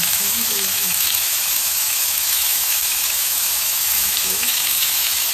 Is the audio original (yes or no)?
no